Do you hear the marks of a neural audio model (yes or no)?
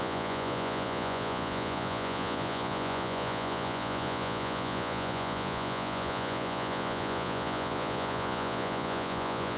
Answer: yes